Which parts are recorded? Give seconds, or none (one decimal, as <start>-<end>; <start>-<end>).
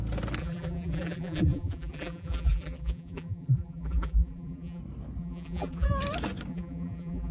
0.0-0.4; 4.8-5.2; 5.9-6.5